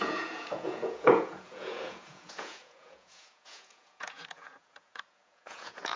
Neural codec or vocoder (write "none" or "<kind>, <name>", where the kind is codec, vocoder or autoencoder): vocoder, Vocos